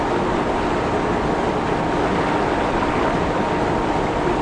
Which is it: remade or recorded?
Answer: recorded